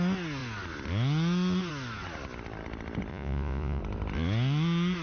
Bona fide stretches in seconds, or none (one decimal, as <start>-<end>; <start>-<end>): 0.0-3.1; 3.8-5.0